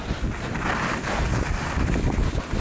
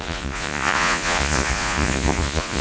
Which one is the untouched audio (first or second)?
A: first